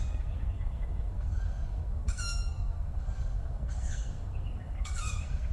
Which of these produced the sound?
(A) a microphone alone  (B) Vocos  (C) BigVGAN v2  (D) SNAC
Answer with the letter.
D